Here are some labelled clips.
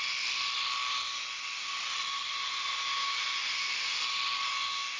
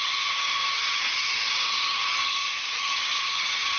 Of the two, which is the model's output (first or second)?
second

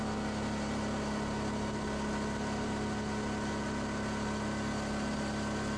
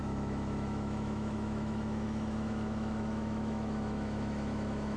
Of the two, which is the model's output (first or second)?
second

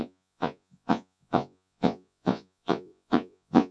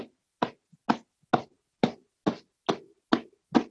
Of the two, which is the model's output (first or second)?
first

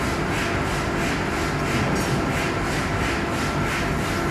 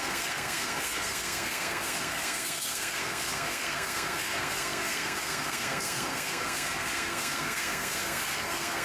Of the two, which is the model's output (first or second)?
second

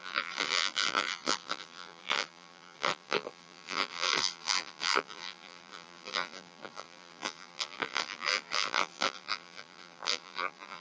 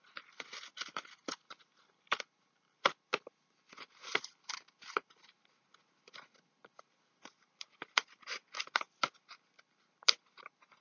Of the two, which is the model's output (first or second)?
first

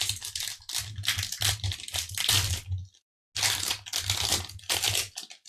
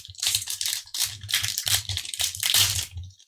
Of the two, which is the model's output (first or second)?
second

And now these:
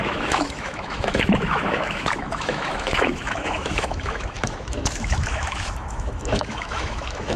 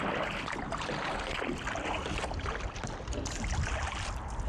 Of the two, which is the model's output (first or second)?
first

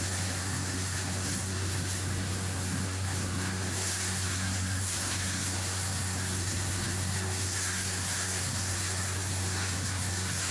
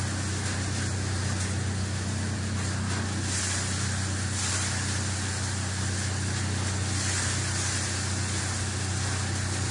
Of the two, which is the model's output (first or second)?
first